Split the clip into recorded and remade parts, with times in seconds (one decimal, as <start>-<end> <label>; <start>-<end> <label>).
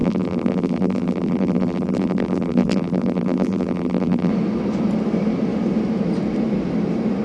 0.0-4.3 remade; 4.3-7.2 recorded